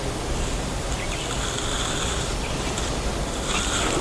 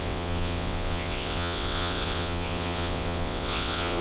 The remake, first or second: second